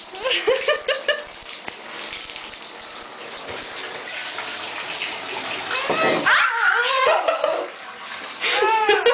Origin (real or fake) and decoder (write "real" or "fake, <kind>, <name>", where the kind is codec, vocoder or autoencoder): real